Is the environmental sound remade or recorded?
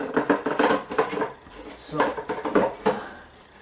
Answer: recorded